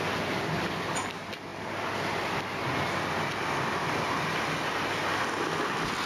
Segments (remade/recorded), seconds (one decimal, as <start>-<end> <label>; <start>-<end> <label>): 0.0-6.1 recorded